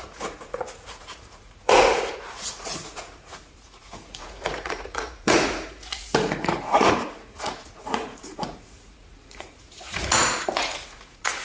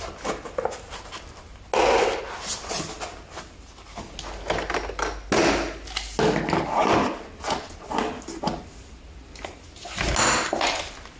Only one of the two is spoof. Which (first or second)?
first